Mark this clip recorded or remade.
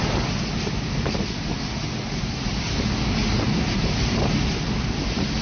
recorded